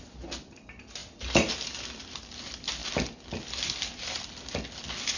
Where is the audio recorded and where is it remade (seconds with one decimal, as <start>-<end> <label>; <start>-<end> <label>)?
0.0-5.2 recorded